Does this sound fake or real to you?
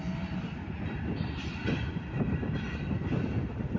real